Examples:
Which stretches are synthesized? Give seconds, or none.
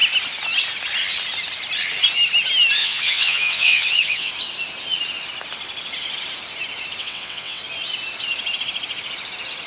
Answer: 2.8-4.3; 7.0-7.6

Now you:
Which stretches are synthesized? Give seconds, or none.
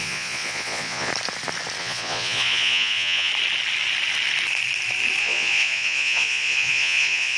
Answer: 0.0-1.1; 1.8-3.3; 5.2-7.4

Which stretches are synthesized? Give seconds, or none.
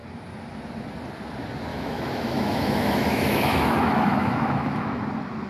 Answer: 1.7-5.0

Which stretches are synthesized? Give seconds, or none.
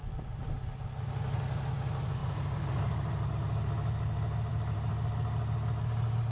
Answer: 0.0-0.5; 2.2-3.3; 4.5-5.1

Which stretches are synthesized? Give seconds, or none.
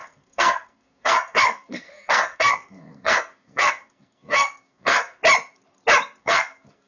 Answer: 0.0-5.2; 6.2-6.9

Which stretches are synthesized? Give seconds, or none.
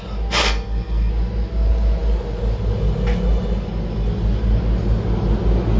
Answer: 0.4-1.1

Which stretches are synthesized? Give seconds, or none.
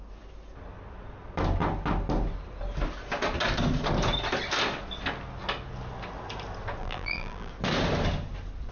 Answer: 6.8-7.5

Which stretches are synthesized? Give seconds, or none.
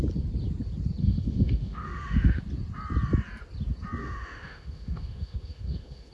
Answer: 1.0-2.4; 4.0-6.1